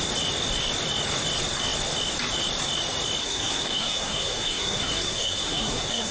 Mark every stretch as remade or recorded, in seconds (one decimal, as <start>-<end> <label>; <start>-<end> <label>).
0.0-3.2 recorded; 3.2-6.1 remade